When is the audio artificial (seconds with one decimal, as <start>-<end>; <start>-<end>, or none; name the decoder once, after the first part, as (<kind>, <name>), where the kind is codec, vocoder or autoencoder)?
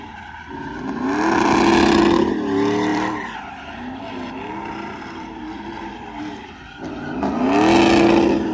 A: 2.9-6.2 (vocoder, BigVGAN v2)